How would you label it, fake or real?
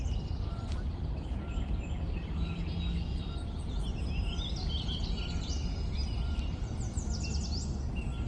real